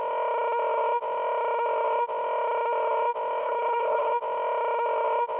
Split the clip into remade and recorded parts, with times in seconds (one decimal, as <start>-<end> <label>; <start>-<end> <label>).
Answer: 0.0-3.4 recorded; 3.4-4.1 remade; 4.1-5.4 recorded